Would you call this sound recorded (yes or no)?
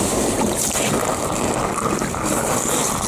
yes